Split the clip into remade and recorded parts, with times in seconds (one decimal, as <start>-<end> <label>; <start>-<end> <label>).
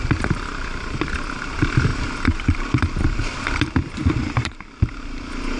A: 0.0-5.6 remade